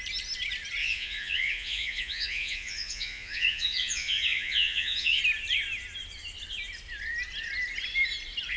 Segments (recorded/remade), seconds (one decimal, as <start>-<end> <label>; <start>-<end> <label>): 0.0-0.8 recorded; 0.8-5.2 remade; 5.2-8.6 recorded